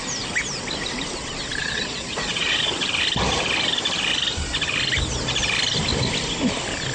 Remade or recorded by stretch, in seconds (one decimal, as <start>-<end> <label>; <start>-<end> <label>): 0.0-1.6 recorded; 1.6-2.8 remade; 2.8-6.9 recorded